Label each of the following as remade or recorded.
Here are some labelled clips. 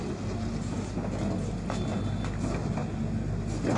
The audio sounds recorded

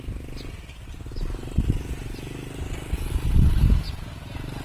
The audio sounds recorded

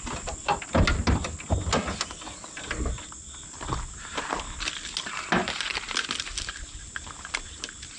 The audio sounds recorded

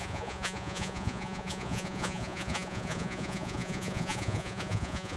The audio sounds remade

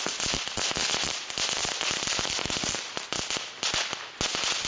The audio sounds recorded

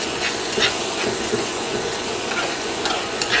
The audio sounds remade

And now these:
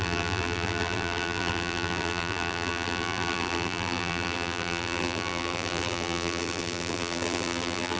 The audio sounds remade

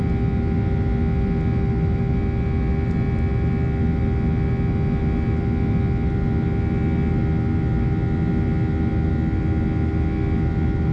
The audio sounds recorded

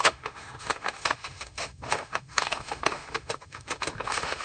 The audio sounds remade